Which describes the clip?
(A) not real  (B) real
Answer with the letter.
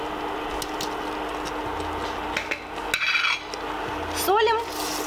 B